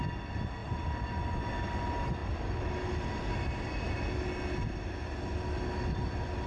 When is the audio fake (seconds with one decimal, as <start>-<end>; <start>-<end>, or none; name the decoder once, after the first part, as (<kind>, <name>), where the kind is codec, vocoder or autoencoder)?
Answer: none